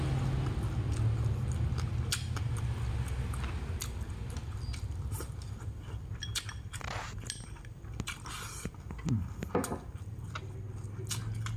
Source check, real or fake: real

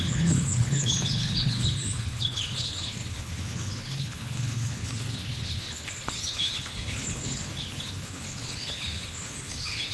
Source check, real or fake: fake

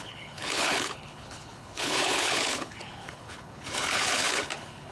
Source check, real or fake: fake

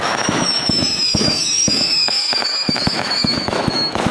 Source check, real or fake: fake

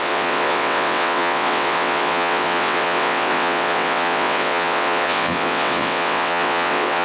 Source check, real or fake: fake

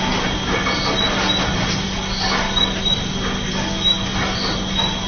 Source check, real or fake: real